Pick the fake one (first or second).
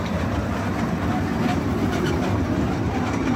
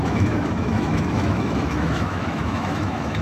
second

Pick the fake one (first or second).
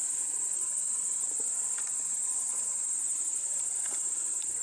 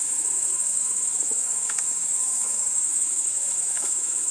second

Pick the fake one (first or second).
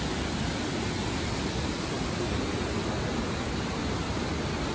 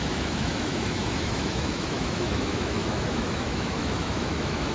second